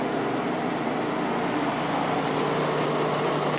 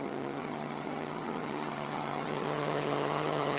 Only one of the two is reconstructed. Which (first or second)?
second